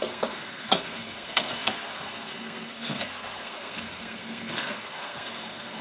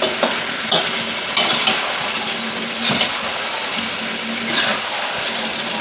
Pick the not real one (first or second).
first